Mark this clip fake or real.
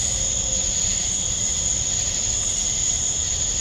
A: real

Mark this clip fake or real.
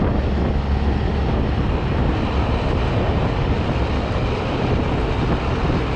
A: real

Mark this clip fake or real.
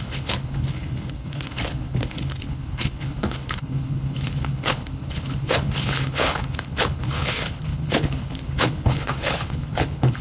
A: fake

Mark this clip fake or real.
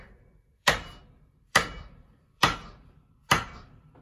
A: fake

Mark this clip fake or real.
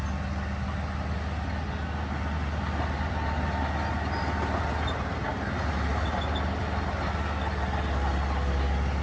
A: real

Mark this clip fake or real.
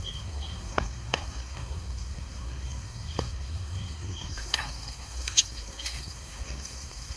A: fake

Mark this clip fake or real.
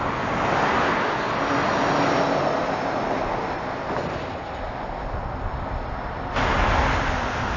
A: real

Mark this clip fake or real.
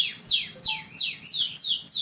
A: real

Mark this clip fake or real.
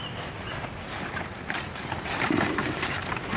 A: real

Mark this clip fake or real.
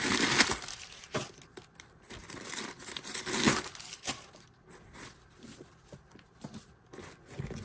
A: real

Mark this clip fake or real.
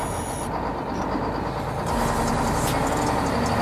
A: real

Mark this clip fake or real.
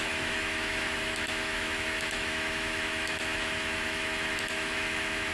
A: fake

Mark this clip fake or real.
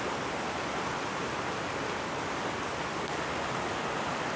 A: real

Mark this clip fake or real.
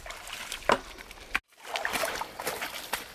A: real